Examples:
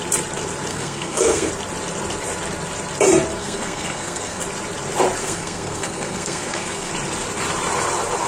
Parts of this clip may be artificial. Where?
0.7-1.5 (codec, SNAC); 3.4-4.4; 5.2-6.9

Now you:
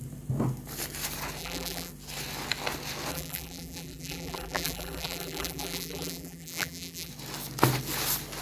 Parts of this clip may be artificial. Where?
1.4-1.9 (vocoder, BigVGAN v2); 3.1-7.1

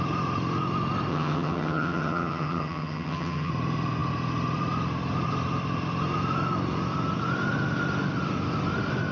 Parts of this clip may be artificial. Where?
1.1-3.5 (vocoder, HiFi-GAN)

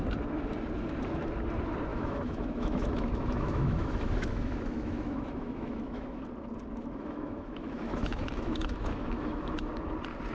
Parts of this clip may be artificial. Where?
1.9-6.2 (autoencoder, DAC-VAE); 6.8-9.7